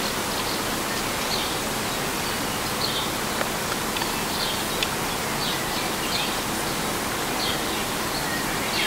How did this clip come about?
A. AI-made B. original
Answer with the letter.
B